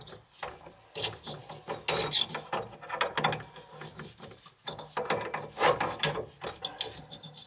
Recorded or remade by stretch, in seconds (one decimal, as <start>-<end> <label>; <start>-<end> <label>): 0.0-7.5 recorded